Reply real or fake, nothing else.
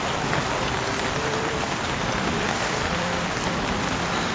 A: fake